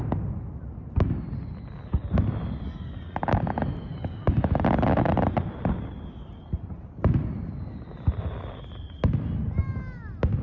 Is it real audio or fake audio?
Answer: real